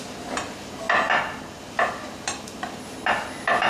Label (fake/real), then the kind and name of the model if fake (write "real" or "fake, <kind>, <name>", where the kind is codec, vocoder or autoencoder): real